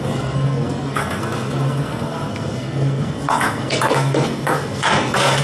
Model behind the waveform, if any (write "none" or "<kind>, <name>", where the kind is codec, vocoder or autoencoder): codec, SNAC